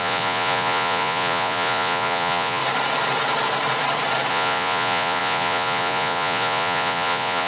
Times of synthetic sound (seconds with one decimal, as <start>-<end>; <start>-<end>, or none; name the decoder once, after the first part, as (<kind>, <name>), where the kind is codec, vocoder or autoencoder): 0.0-2.6 (vocoder, Vocos); 4.3-7.5